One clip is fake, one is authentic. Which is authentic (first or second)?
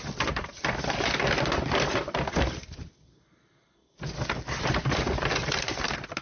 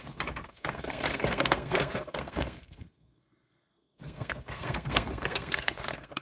first